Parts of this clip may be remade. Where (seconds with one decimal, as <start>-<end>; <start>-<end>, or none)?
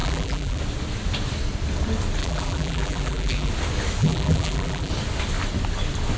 0.0-0.6; 2.2-3.5; 4.0-4.9